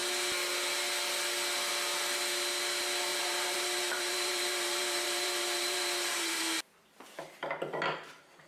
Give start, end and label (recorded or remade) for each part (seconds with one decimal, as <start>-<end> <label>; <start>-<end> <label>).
0.0-3.1 recorded; 3.1-6.4 remade; 6.4-8.5 recorded